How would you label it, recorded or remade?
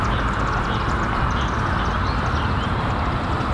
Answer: recorded